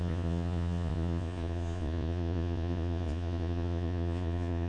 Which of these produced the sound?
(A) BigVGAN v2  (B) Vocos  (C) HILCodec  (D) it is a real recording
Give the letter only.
B